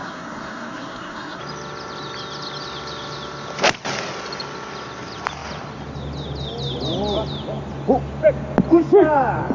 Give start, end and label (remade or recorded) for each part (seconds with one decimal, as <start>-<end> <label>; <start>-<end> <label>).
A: 0.0-1.4 remade; 1.4-9.5 recorded